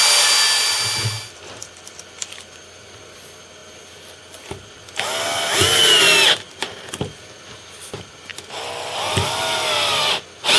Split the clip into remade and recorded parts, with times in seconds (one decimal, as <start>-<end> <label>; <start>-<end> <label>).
0.0-10.6 recorded